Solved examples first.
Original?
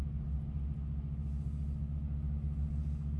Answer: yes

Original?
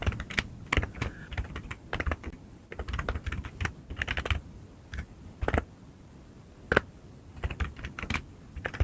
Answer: yes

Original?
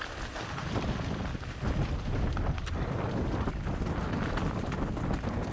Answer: yes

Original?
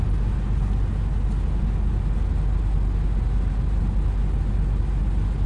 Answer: yes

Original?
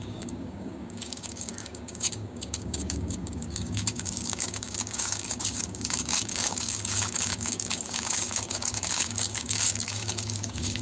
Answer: no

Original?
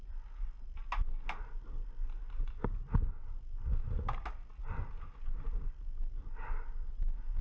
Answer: yes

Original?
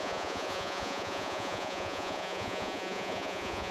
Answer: no